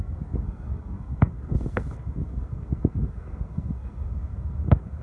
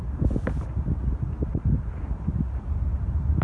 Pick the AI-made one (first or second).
first